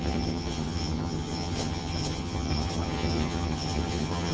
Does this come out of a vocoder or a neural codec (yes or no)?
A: yes